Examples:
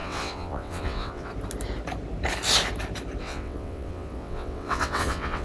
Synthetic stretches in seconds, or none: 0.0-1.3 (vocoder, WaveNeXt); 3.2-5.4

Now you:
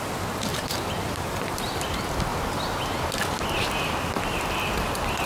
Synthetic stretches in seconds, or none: 0.5-1.7 (vocoder, BigVGAN v2)

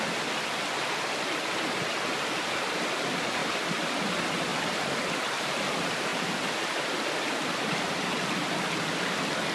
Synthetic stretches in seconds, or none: none

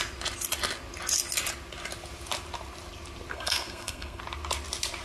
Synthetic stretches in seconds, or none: 3.3-4.2 (codec, SNAC)

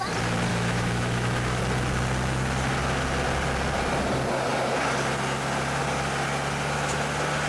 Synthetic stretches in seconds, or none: 0.5-1.6 (autoencoder, DAC-VAE)

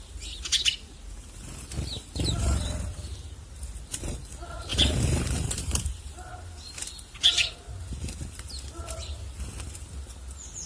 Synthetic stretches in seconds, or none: 4.7-6.1 (vocoder, BigVGAN v2)